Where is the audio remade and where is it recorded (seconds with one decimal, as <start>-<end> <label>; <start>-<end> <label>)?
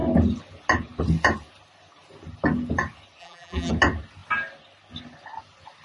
0.0-3.2 recorded; 3.2-3.7 remade; 3.7-5.8 recorded